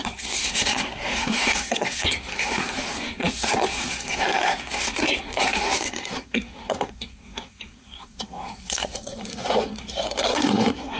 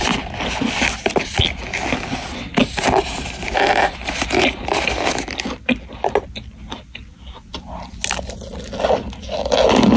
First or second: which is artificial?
first